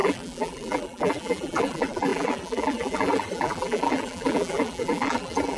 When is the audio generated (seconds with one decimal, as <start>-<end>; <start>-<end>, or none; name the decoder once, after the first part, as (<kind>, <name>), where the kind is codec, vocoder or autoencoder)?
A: 0.0-5.6 (vocoder, BigVGAN v2)